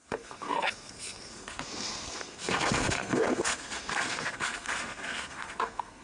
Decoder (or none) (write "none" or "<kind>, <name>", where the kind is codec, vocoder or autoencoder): codec, SNAC